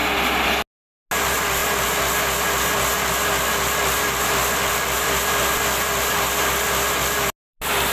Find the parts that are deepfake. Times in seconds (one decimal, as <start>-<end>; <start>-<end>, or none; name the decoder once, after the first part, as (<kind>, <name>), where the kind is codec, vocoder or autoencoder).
none